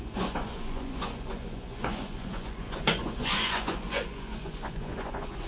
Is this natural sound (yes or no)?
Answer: no